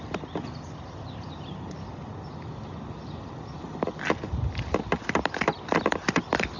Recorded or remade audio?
recorded